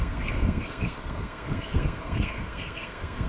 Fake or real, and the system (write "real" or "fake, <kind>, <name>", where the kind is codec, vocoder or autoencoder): fake, codec, SNAC